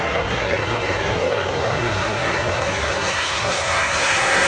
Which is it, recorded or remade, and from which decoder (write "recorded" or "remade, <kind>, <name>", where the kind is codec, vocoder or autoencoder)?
remade, codec, SNAC